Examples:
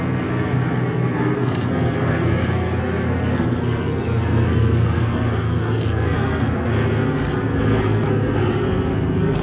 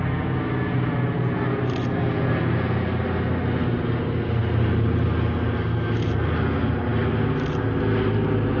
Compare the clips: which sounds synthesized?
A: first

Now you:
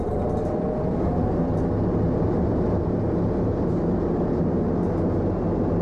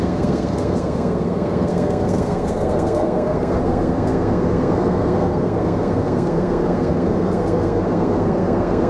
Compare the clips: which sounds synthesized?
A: second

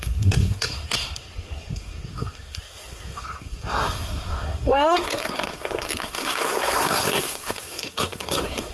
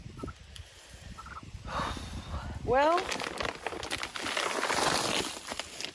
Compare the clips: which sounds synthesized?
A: first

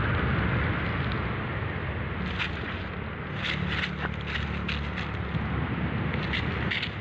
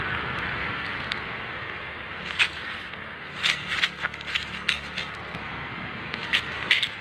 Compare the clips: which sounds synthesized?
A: second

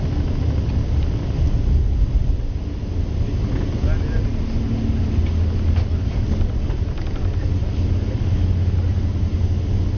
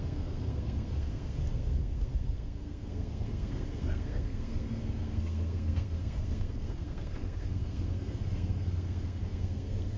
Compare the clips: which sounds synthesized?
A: second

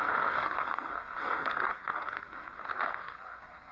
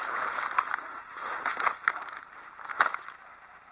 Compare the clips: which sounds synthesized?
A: first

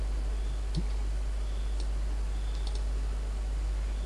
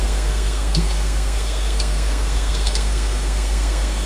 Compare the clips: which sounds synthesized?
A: second